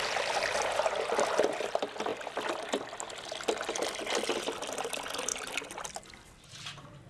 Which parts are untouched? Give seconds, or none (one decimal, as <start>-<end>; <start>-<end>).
0.0-7.1